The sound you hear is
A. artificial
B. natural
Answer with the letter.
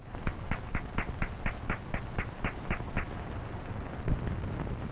B